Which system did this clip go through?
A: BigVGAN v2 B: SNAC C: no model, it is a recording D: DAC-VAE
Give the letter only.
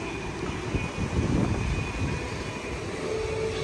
C